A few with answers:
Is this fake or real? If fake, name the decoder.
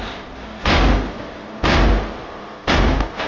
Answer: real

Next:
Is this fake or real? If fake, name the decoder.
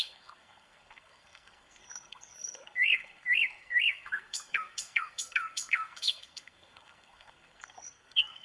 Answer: fake, codec, SNAC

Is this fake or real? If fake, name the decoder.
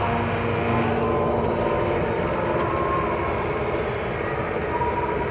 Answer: real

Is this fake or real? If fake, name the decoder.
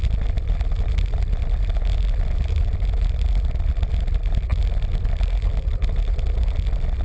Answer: real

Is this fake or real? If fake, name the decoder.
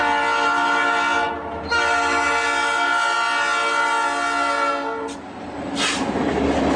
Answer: real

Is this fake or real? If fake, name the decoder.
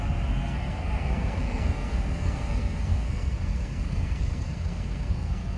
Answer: fake, codec, SNAC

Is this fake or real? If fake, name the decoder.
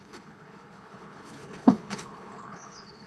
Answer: fake, codec, HILCodec